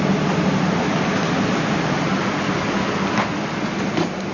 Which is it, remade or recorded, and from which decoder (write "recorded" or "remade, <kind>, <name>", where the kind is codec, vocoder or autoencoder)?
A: recorded